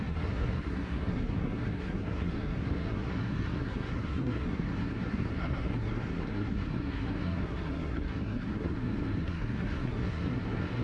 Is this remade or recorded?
remade